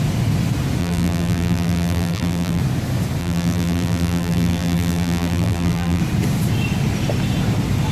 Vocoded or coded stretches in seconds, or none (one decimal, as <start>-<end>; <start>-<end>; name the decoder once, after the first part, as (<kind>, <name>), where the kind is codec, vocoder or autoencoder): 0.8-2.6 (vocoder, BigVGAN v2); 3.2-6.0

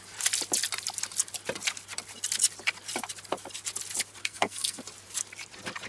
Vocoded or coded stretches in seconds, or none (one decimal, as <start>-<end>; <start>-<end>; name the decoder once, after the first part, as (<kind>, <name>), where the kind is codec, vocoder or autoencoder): 4.2-4.8 (codec, SNAC)

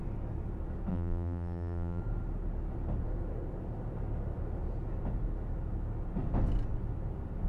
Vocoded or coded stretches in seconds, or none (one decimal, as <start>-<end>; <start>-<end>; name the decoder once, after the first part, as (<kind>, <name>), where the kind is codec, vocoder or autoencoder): 0.9-2.0 (vocoder, BigVGAN v2)